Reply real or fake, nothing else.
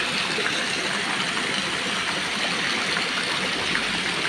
real